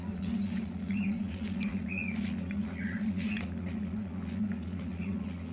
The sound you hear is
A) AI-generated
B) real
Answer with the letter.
A